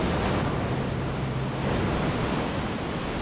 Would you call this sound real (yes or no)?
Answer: yes